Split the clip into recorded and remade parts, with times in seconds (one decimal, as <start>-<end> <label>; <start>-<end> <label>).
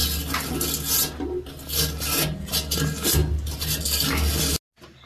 0.0-5.1 recorded